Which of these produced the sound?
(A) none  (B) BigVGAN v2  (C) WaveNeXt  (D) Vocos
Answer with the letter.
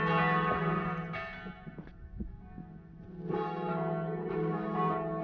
A